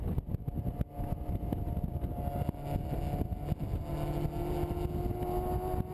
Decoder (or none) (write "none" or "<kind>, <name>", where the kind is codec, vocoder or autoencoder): none